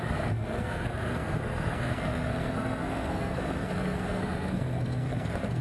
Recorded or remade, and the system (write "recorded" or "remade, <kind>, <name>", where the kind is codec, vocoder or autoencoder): remade, codec, SNAC